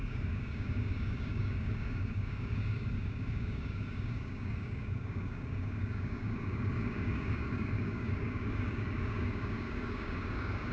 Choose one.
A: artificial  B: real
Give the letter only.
A